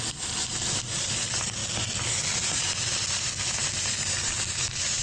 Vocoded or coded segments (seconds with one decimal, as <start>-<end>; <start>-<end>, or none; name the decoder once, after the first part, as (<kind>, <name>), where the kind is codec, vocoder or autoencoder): none

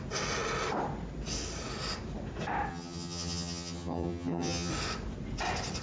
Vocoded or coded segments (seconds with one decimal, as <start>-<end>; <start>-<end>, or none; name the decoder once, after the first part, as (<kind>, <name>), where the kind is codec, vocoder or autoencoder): 2.7-4.7 (vocoder, HiFi-GAN)

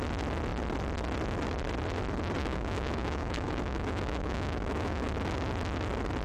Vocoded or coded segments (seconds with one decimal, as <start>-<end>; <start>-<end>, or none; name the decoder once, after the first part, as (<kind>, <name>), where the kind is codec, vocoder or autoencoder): 2.4-5.1 (autoencoder, DAC-VAE)

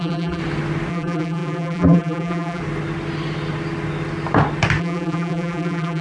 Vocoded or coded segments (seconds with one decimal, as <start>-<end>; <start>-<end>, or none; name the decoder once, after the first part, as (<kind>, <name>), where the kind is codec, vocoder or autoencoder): 0.0-0.4 (vocoder, BigVGAN v2); 0.9-2.6; 4.8-6.0

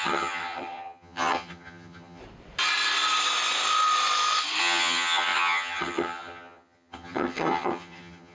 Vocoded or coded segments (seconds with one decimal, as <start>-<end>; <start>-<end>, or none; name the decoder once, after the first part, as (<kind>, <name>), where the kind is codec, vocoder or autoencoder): 0.0-2.2 (vocoder, HiFi-GAN); 4.6-8.3

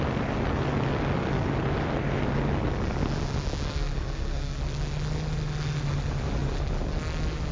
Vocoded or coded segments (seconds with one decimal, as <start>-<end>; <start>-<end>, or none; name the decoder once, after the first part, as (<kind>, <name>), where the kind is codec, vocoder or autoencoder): 3.7-4.6 (codec, SNAC)